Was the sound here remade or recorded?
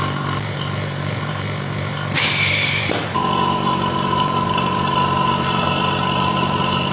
remade